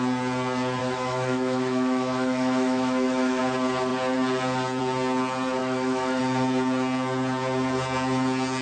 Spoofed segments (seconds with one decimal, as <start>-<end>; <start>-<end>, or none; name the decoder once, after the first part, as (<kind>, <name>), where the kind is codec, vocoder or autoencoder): 0.8-3.4 (autoencoder, DAC-VAE); 5.6-6.2